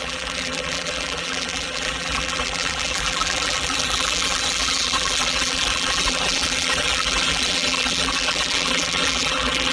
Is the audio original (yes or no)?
no